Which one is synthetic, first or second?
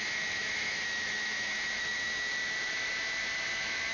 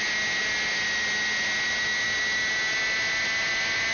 first